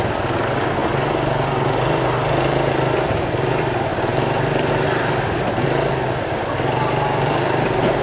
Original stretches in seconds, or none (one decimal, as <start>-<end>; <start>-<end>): 0.0-8.0